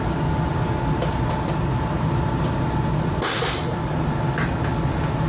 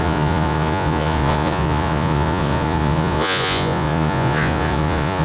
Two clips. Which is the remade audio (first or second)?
second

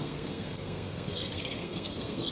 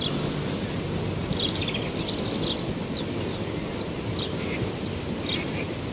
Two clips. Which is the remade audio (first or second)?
first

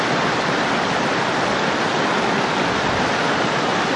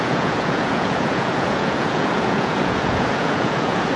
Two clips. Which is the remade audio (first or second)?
second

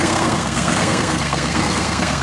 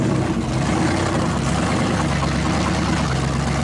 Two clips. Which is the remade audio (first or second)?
first